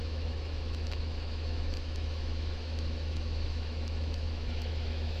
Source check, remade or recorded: remade